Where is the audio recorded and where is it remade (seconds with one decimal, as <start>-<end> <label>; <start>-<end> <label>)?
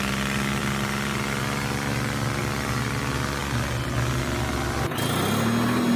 0.0-6.0 recorded